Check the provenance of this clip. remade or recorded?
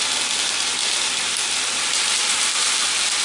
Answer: recorded